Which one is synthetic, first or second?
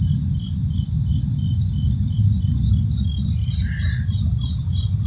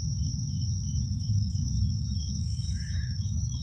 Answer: second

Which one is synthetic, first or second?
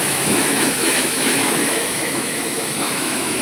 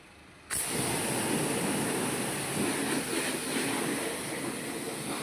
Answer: first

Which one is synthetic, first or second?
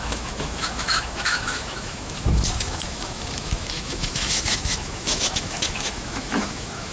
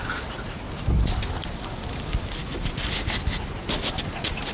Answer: first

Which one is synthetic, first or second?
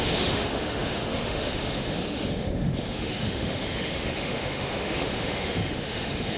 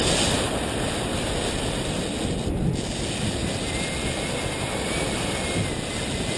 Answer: first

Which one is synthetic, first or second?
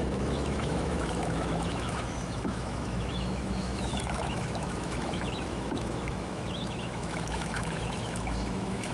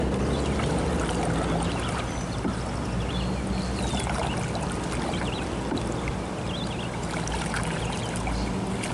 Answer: first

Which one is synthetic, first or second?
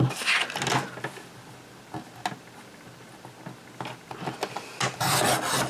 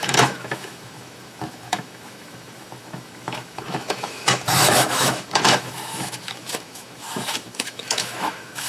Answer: second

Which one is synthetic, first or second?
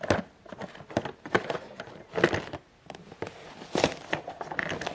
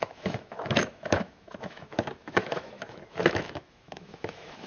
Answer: second